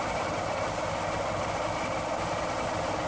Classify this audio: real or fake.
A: real